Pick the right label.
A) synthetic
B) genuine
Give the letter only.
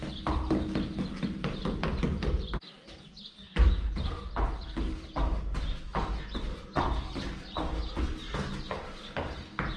B